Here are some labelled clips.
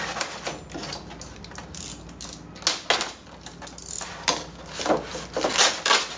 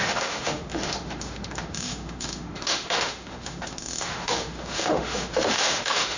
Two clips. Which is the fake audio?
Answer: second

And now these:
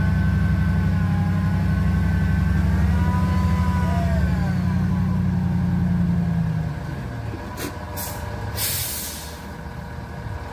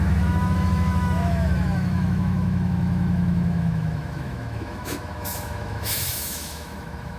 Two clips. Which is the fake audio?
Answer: second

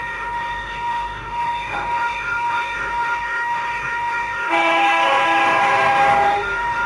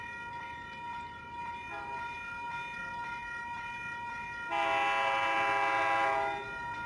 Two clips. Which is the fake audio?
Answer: first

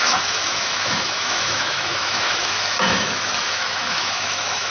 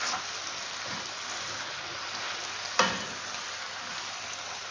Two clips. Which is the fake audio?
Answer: first